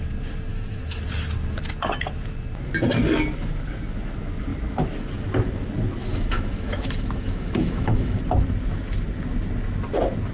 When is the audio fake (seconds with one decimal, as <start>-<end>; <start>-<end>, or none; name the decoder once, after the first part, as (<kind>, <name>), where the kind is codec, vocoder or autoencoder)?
0.5-1.0 (autoencoder, DAC-VAE); 6.0-8.2

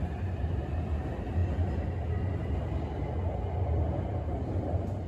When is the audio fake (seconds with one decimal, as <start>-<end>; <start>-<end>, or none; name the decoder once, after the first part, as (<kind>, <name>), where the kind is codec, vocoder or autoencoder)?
0.0-1.4 (vocoder, BigVGAN v2); 4.5-5.1

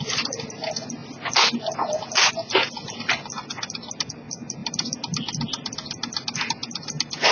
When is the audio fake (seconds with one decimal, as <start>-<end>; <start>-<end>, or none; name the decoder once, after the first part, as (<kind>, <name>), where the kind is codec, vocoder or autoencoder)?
none

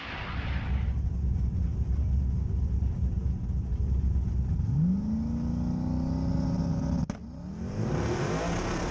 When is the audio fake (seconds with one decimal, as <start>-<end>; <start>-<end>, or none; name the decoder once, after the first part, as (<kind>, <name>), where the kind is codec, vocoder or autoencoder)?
none

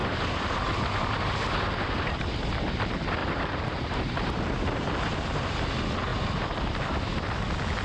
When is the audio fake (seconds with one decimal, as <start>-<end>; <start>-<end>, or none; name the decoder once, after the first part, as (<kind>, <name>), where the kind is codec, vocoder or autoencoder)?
3.2-5.0 (vocoder, BigVGAN v2)